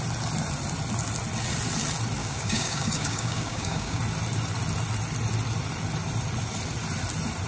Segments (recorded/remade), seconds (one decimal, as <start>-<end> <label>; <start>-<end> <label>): 0.0-2.2 recorded; 2.2-4.0 remade; 4.0-7.5 recorded